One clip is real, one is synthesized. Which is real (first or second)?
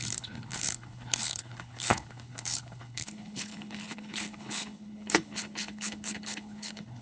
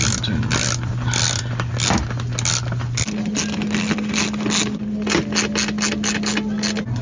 second